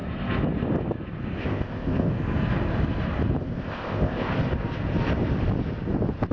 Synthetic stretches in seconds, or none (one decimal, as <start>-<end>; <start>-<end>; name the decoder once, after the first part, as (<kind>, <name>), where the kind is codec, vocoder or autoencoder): 1.4-2.1 (codec, ZipCodec); 3.4-4.3